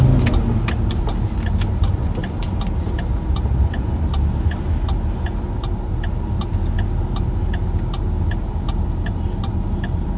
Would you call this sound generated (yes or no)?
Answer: no